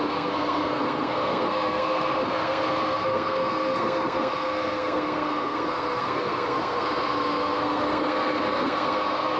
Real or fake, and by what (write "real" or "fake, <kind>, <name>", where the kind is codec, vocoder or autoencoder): fake, codec, SNAC